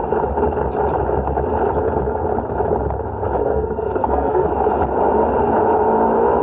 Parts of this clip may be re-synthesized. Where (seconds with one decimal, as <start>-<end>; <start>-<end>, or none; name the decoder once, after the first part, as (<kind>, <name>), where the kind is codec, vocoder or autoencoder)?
3.4-4.5 (codec, SNAC)

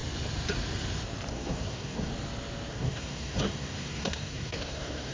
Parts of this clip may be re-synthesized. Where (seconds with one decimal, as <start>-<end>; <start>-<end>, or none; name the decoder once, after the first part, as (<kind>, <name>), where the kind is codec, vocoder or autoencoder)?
1.3-2.1 (codec, SNAC); 2.7-5.1

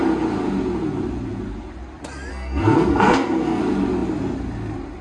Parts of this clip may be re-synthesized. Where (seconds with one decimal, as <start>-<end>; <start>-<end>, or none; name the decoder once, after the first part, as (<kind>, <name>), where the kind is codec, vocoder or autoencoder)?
2.3-3.6 (codec, SNAC)

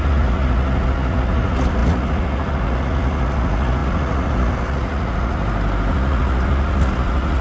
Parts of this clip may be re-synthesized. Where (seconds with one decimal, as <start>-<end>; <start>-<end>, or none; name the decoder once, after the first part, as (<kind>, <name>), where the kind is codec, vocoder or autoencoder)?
0.0-5.4 (vocoder, Vocos); 5.9-7.4

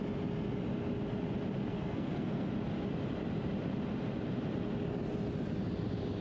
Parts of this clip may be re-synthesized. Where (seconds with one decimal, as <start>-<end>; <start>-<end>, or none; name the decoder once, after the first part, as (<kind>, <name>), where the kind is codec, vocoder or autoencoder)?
1.7-2.5 (codec, SNAC)